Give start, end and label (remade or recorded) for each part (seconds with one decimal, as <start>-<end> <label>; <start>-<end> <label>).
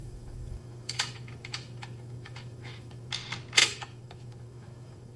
0.0-3.1 remade; 3.1-3.6 recorded; 3.6-5.2 remade